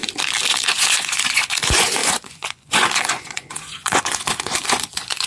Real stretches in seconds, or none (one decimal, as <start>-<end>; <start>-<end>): 0.0-0.5